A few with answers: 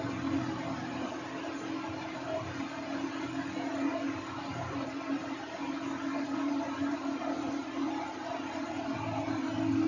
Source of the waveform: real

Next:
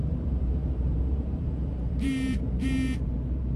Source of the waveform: fake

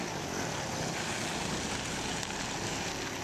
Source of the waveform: real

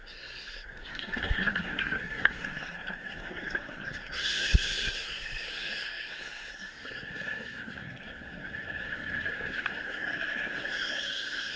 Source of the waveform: fake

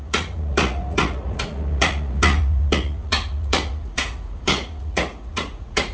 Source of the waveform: fake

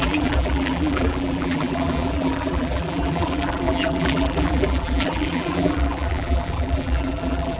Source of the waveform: fake